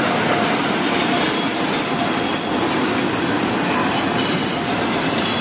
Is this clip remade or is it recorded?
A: recorded